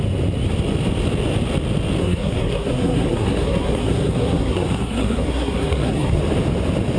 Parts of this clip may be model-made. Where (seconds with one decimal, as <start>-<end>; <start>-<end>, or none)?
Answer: 2.0-6.2